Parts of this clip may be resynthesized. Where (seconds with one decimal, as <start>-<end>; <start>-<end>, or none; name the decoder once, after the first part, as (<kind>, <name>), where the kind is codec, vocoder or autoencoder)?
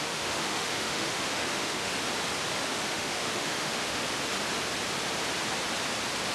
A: 0.0-1.9 (autoencoder, DAC-VAE); 2.6-4.0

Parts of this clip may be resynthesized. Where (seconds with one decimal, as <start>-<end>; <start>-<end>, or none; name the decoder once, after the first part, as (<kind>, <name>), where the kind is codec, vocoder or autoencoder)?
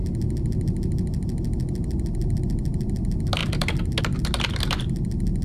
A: none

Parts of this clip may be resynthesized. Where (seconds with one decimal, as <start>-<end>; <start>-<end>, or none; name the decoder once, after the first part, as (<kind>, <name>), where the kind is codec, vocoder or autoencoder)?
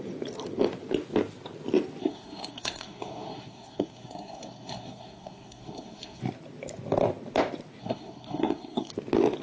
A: 2.0-6.2 (codec, SNAC); 7.8-8.9